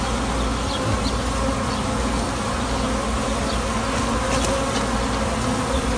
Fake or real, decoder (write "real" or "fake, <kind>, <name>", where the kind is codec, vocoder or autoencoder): real